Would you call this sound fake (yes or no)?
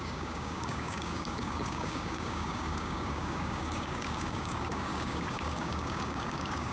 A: yes